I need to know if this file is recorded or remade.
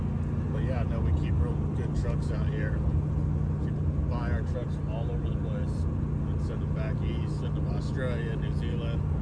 recorded